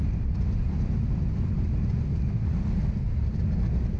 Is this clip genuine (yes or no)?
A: yes